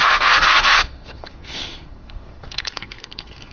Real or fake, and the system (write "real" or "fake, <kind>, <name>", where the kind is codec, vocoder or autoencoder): fake, codec, SNAC